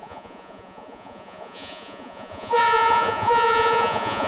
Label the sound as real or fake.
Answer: fake